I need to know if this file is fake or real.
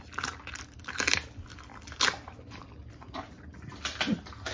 real